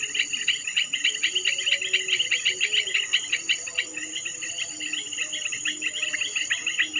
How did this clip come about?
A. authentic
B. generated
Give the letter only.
A